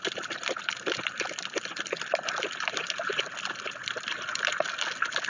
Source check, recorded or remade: recorded